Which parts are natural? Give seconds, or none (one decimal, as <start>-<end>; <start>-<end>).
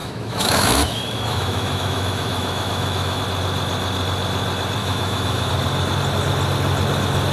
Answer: 3.2-4.8; 5.5-7.3